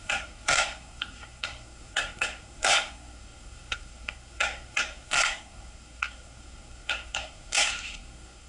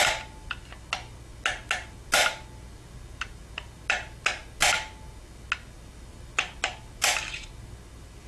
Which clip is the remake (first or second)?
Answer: first